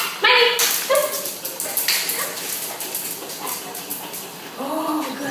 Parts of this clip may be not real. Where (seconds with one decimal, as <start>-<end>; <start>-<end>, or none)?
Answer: none